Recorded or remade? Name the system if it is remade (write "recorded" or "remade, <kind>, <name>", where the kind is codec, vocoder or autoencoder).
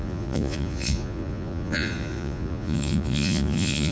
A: remade, vocoder, Vocos